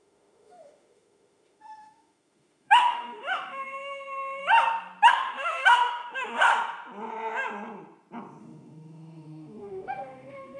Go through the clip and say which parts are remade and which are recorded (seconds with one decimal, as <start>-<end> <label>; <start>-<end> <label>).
0.0-4.4 remade; 4.4-5.1 recorded; 5.1-6.5 remade; 6.5-8.4 recorded; 8.4-10.6 remade